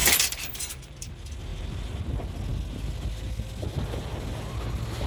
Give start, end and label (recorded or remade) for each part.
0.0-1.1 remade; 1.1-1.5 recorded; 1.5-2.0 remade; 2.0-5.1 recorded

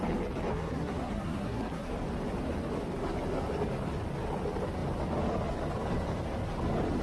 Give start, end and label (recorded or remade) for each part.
0.0-0.5 recorded; 0.5-1.9 remade; 1.9-7.0 recorded

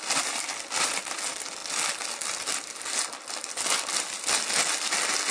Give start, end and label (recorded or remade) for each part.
0.0-5.3 recorded

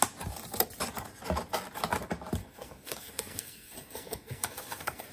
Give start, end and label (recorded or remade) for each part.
0.0-2.4 recorded; 2.4-5.1 remade

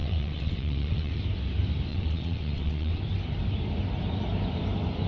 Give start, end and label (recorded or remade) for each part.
0.0-1.2 remade; 1.2-1.9 recorded; 1.9-3.0 remade; 3.0-5.1 recorded

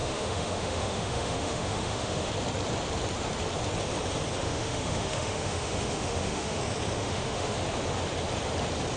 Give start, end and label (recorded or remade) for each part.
0.0-2.3 remade; 2.3-4.4 recorded; 4.4-6.6 remade; 6.6-7.0 recorded; 7.0-7.6 remade; 7.6-9.0 recorded

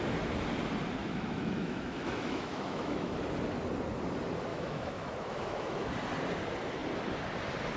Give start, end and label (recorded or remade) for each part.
0.0-1.0 recorded; 1.0-3.2 remade; 3.2-4.5 recorded; 4.5-5.9 remade; 5.9-7.8 recorded